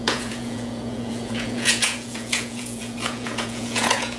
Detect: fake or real fake